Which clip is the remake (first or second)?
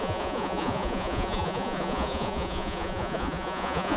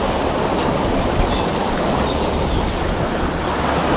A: first